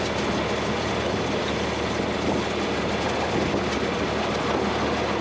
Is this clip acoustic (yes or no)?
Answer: yes